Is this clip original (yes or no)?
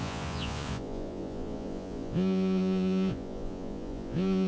no